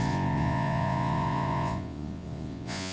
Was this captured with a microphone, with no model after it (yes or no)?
no